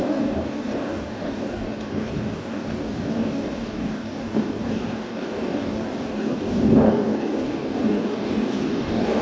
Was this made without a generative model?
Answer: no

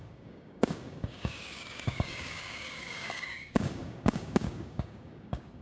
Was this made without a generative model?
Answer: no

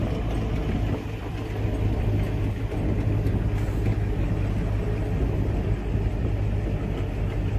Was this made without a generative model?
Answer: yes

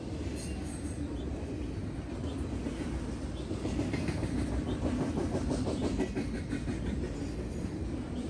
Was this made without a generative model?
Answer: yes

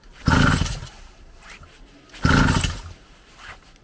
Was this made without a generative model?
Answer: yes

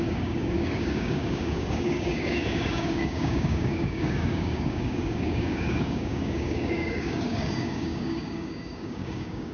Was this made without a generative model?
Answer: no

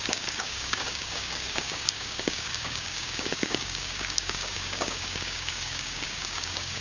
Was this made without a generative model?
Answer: no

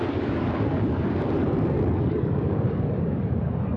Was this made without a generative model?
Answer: no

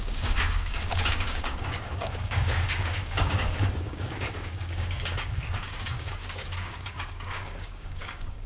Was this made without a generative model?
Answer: no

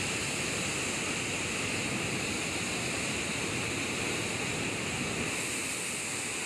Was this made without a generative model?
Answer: yes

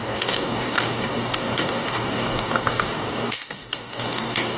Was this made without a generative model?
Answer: no